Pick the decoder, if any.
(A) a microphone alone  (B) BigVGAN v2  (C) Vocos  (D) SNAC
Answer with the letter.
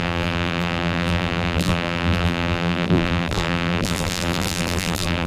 B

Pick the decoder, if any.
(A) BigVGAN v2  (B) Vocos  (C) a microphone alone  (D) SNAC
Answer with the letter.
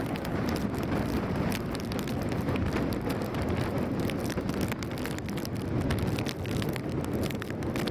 C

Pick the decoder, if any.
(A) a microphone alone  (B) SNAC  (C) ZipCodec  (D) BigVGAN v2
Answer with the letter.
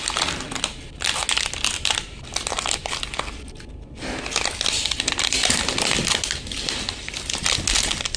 A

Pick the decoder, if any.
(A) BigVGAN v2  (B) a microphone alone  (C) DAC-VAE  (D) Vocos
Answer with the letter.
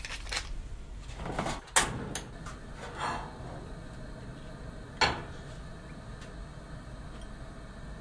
B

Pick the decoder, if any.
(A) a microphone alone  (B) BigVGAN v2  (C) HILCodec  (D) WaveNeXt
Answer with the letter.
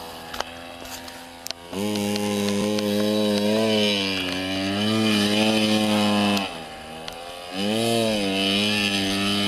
A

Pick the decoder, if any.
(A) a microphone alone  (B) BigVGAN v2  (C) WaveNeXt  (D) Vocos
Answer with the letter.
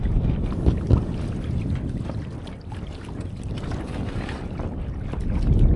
A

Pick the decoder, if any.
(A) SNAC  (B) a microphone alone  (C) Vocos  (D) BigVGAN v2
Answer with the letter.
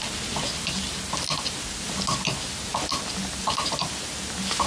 B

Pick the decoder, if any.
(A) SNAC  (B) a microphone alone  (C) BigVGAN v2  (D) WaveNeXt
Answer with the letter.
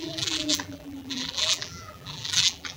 C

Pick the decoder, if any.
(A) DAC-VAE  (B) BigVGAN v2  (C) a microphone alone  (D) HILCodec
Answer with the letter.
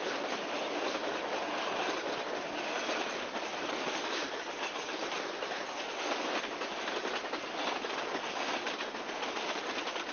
C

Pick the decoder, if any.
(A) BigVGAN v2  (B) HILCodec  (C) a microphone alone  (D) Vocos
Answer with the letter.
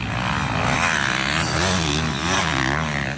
C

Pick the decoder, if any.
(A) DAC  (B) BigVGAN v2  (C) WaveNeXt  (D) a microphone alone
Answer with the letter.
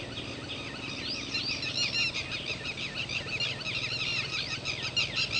D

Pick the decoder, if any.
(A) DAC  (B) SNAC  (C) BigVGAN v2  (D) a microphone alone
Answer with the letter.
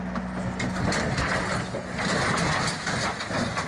D